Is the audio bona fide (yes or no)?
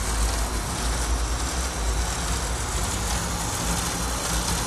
yes